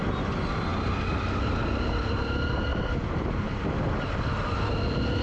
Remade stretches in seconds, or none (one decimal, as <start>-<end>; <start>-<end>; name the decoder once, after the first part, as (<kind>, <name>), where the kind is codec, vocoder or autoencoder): 2.7-3.6 (vocoder, BigVGAN v2)